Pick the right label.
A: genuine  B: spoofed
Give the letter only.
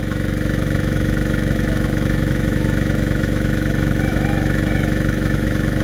B